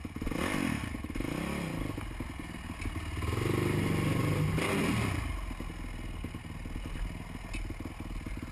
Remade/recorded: recorded